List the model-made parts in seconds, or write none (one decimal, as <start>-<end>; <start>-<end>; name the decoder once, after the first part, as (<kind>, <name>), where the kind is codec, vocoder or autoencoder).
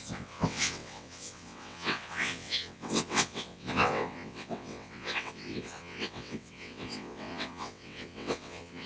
0.0-8.9 (vocoder, WaveNeXt)